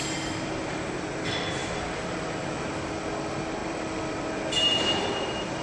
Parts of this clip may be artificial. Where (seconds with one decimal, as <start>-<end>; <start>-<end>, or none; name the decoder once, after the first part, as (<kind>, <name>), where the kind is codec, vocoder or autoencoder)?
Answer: 3.6-4.4 (vocoder, BigVGAN v2)